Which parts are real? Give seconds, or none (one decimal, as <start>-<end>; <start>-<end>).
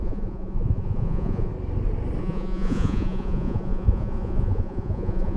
1.5-2.2